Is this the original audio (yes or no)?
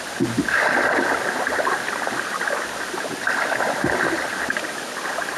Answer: yes